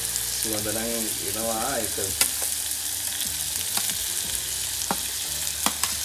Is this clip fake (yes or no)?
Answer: no